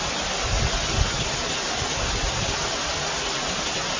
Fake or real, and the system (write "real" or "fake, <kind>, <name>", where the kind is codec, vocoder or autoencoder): real